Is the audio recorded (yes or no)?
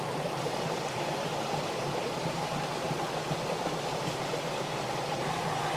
yes